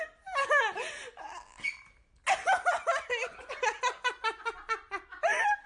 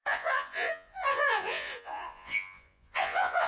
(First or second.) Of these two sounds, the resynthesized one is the second